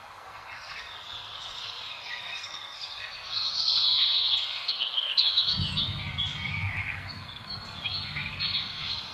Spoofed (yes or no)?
yes